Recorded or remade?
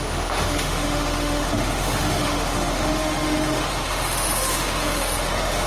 remade